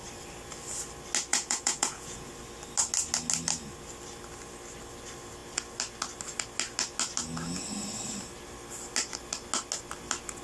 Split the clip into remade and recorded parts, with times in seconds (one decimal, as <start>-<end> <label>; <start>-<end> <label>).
0.0-1.3 recorded; 1.3-2.3 remade; 2.3-10.4 recorded